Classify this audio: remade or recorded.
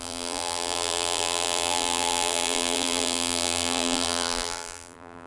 remade